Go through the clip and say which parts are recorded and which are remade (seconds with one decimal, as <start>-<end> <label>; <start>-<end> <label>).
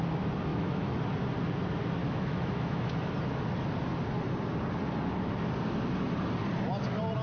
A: 0.0-0.5 recorded; 0.5-1.0 remade; 1.0-2.0 recorded; 2.0-3.1 remade; 3.1-7.2 recorded